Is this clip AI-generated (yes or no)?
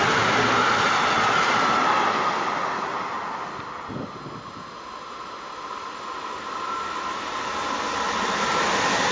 no